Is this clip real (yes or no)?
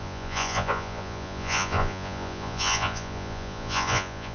no